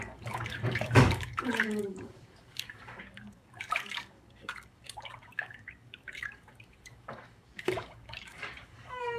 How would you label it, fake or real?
fake